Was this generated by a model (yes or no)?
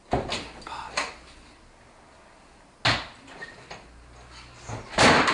no